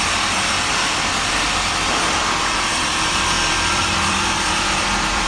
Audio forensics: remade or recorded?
remade